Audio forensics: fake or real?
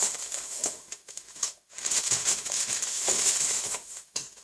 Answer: fake